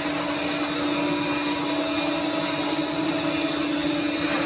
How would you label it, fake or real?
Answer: real